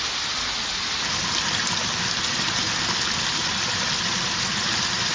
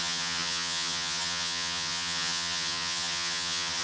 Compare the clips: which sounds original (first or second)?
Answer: first